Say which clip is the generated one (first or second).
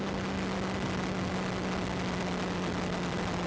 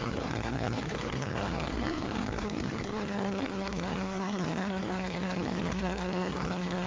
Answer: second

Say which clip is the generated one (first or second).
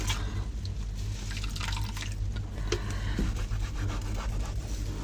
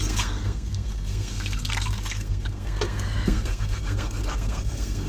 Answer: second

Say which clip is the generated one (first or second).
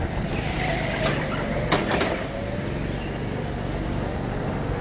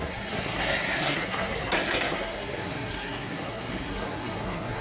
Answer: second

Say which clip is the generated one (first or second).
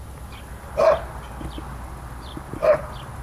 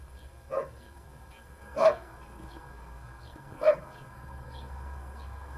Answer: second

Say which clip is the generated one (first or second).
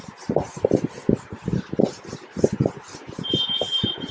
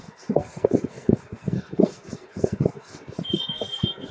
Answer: second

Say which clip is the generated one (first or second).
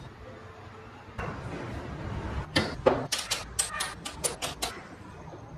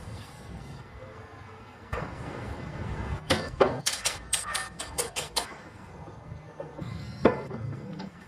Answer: second